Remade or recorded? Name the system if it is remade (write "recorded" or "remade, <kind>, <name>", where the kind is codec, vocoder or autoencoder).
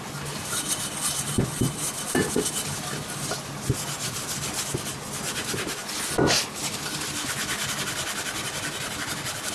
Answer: recorded